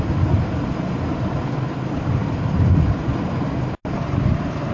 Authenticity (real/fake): real